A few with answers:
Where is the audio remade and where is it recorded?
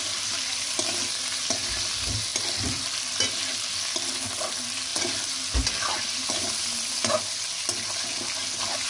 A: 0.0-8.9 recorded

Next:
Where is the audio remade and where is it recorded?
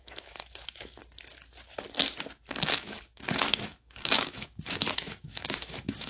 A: 0.0-1.0 remade; 1.0-2.5 recorded; 2.5-6.1 remade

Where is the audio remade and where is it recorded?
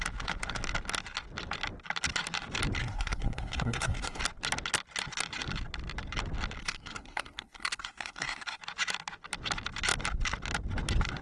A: 0.0-2.8 recorded; 2.8-4.2 remade; 4.2-6.6 recorded; 6.6-8.6 remade; 8.6-11.2 recorded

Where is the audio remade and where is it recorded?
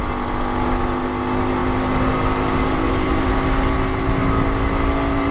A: 0.0-5.3 recorded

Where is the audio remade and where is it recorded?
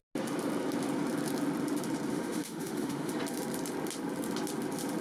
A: 0.0-2.1 recorded; 2.1-3.1 remade; 3.1-5.0 recorded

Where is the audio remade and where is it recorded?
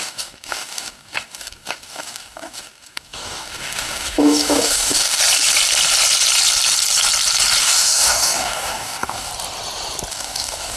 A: 0.0-5.2 remade; 5.2-7.6 recorded; 7.6-9.3 remade; 9.3-10.1 recorded; 10.1-10.8 remade